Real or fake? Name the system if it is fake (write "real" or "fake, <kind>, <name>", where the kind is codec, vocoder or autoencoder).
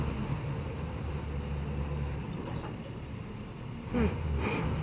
real